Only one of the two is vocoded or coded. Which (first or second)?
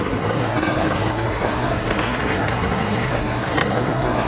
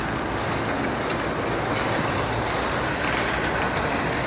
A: first